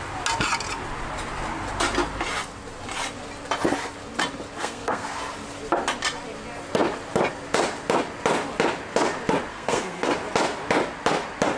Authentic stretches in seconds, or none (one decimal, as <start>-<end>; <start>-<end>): 0.0-4.6; 5.2-9.5; 10.1-11.6